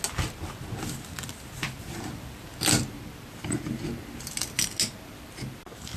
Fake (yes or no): no